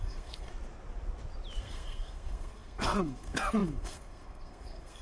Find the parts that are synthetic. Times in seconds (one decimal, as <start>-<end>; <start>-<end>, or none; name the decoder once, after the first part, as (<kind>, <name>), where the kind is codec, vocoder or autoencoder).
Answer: 0.0-0.5 (codec, SNAC); 1.6-5.0